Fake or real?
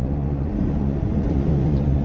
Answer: fake